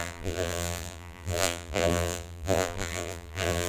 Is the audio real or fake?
fake